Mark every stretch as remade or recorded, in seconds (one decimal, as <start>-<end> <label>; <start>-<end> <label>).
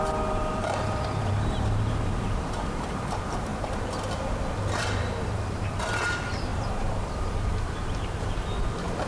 0.0-3.5 remade; 3.5-4.8 recorded; 4.8-9.1 remade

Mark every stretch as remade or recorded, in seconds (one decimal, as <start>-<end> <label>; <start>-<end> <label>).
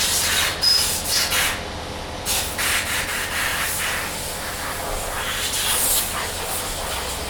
0.0-7.3 recorded